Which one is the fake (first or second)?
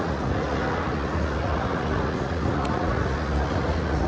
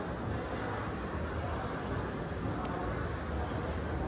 first